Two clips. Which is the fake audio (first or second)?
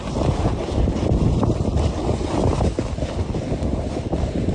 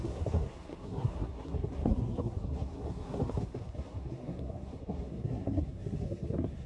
second